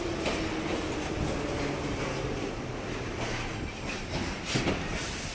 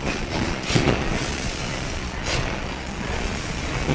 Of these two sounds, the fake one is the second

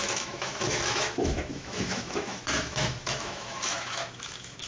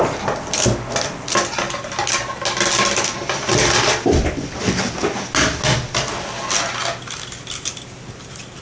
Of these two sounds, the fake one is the first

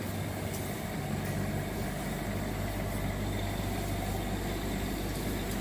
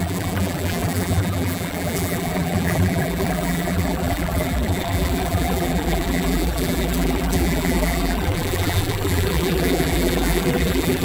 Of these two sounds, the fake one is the second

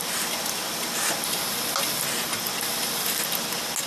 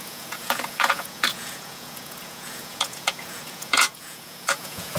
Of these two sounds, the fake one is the second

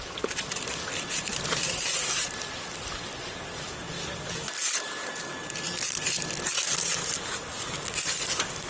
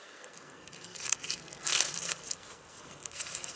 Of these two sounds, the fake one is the second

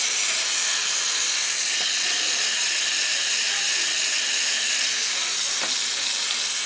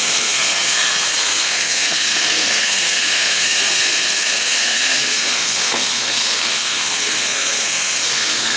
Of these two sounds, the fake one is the second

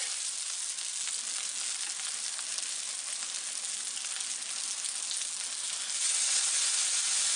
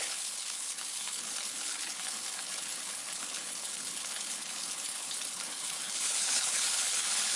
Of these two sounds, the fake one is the second